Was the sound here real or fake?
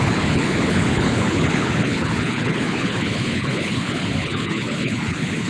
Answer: fake